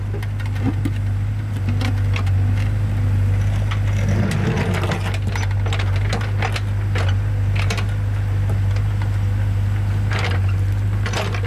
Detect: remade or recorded recorded